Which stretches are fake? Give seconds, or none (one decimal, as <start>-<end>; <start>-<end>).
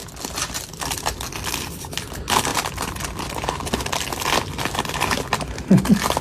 none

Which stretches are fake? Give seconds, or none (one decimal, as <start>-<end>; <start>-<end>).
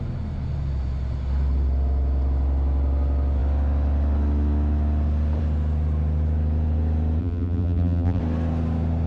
7.2-8.2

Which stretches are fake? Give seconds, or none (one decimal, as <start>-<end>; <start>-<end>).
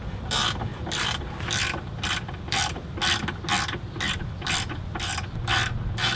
none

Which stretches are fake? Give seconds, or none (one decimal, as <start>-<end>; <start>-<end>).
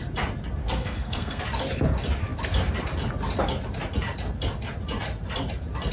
0.6-1.4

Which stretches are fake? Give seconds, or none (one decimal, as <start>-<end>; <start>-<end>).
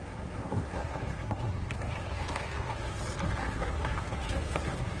0.0-3.0; 3.4-5.0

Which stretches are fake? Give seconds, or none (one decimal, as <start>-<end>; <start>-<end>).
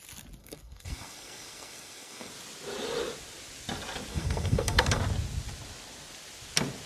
0.4-2.3; 4.1-5.0